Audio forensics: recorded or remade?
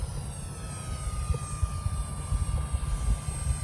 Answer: recorded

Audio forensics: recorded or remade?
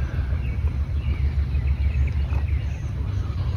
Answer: recorded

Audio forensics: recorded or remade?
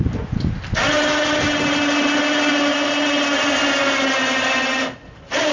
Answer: recorded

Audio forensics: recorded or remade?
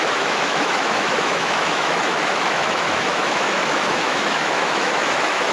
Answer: remade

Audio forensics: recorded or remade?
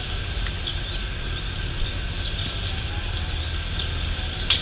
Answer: recorded